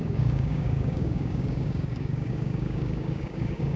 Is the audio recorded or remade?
remade